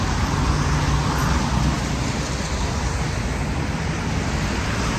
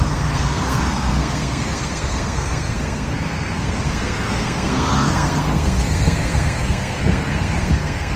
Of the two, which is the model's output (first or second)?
second